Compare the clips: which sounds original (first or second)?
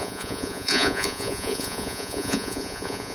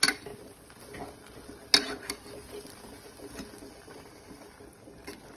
second